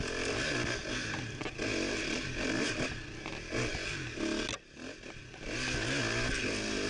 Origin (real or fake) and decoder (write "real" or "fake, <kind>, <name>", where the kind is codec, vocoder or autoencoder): real